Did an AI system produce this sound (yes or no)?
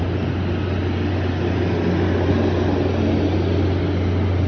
no